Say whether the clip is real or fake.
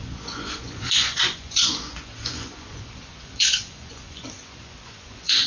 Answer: fake